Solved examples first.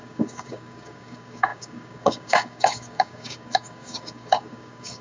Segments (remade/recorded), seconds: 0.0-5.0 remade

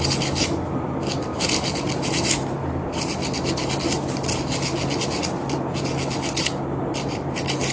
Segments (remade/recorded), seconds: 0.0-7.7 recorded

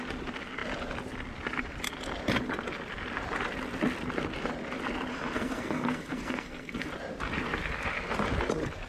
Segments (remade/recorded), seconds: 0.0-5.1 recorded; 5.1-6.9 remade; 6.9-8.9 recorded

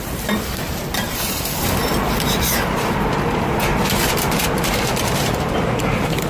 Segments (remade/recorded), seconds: 0.0-1.9 remade; 1.9-3.6 recorded; 3.6-6.3 remade